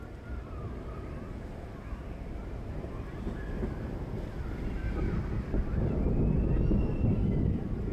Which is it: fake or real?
real